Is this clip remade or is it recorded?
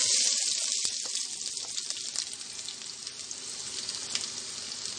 recorded